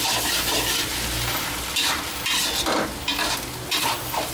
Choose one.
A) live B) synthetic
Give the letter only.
A